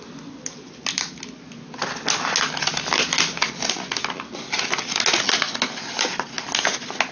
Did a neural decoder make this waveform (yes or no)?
no